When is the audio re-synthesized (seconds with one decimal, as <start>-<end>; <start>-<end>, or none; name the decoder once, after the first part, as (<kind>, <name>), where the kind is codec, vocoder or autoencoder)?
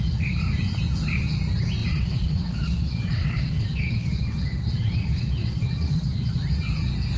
1.8-6.1 (vocoder, WaveNeXt)